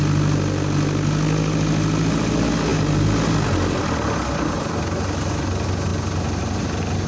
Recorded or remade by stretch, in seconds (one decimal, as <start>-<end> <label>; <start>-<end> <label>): 0.0-7.1 recorded